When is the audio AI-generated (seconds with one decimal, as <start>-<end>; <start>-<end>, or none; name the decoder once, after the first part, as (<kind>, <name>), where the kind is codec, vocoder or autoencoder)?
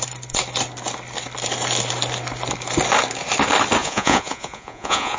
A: 3.8-5.2 (vocoder, Vocos)